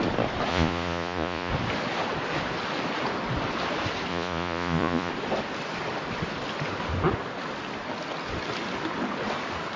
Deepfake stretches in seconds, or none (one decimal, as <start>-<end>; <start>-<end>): 0.5-1.5; 4.1-5.1